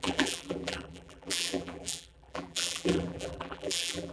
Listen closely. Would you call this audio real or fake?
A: fake